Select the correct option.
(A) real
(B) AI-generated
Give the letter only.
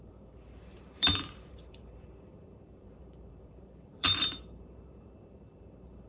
B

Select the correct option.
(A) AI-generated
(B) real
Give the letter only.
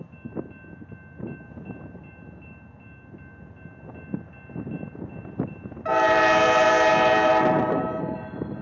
B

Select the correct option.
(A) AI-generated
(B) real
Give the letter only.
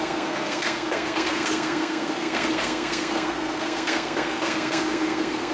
A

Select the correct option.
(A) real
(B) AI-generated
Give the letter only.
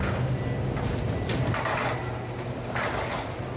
A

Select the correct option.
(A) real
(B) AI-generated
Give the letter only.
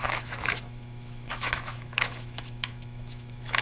B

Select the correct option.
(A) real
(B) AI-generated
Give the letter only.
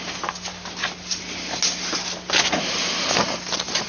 A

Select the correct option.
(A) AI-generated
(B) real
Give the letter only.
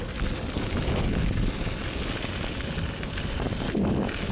B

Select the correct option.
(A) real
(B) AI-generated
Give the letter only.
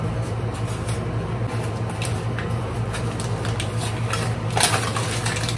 A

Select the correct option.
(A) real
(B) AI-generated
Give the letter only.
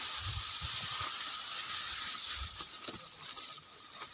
A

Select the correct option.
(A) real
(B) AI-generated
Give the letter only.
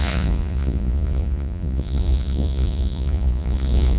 B